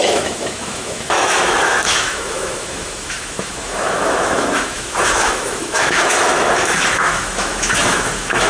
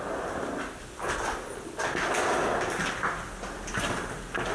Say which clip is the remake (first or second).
first